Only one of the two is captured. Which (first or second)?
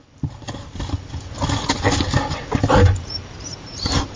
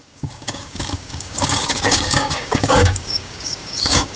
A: first